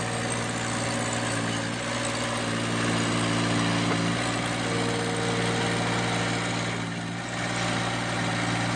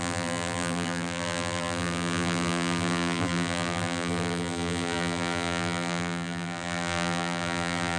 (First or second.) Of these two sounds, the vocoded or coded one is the second